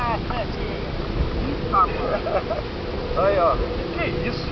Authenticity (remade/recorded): recorded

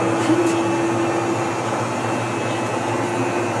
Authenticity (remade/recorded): recorded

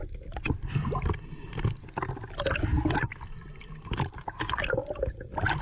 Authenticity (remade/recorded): recorded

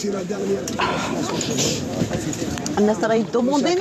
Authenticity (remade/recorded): remade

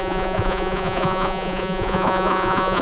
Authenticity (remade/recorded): remade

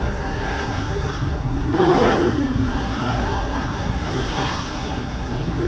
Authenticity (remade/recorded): remade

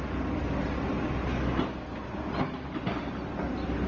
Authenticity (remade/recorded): recorded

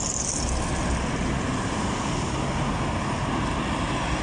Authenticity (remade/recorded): recorded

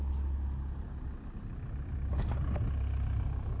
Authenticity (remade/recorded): recorded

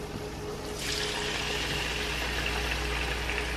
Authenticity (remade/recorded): remade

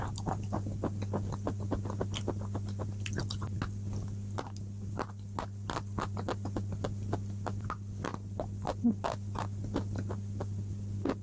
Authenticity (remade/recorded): recorded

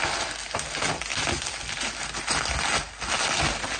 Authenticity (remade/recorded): recorded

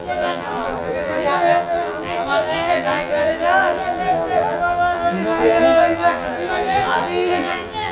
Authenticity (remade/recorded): remade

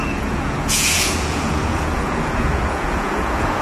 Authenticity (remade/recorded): remade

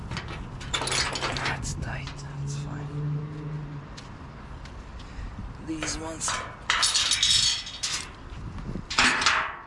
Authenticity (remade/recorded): recorded